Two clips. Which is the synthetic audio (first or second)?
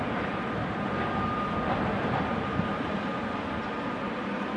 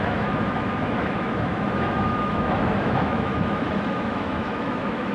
second